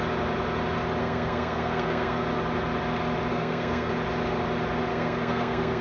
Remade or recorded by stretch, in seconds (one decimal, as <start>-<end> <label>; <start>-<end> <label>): 0.0-1.0 recorded; 1.0-2.2 remade; 2.2-3.3 recorded; 3.3-3.9 remade; 3.9-4.9 recorded; 4.9-5.8 remade